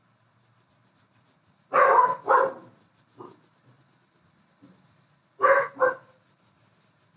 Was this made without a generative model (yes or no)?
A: yes